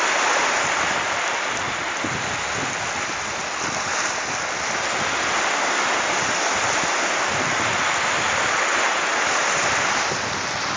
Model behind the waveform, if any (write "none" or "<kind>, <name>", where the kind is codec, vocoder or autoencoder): none